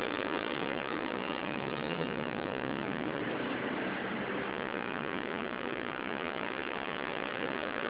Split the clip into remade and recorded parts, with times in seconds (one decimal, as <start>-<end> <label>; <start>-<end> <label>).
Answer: 0.0-3.2 remade; 3.2-4.5 recorded; 4.5-7.9 remade